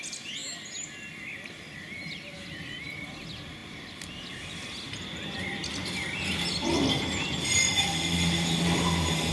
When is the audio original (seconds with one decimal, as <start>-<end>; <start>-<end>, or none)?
0.0-9.3